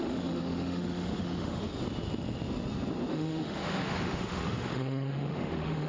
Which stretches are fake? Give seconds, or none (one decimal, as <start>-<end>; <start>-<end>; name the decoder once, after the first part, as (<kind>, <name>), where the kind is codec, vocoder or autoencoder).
0.0-1.7 (autoencoder, DAC-VAE); 3.1-5.9